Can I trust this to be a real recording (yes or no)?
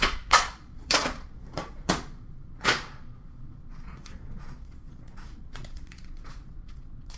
no